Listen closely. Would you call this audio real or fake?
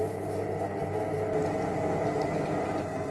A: real